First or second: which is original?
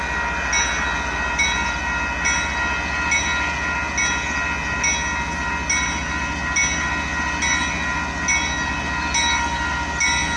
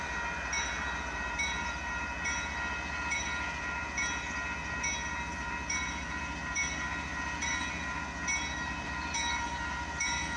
first